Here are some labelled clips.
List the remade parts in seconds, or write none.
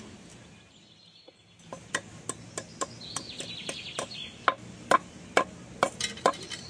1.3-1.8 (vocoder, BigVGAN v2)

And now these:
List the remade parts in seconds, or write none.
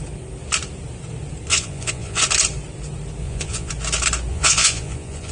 1.5-2.2 (vocoder, Vocos); 3.2-3.7; 4.3-5.3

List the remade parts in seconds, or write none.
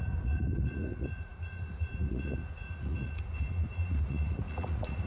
0.0-5.1 (vocoder, Vocos)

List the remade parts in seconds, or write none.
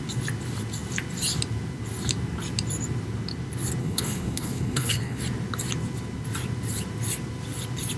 3.8-5.2 (codec, HILCodec)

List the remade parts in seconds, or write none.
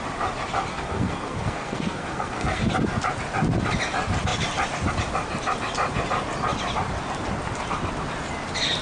0.7-2.7 (codec, SNAC)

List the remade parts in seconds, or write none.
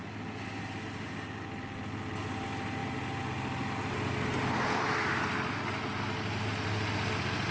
none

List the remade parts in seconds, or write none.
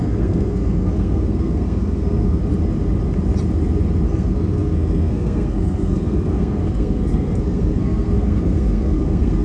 0.0-2.4 (codec, SNAC); 4.1-9.4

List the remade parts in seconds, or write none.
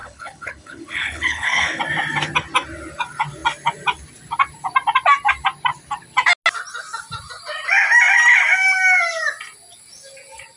0.0-1.8 (codec, HILCodec)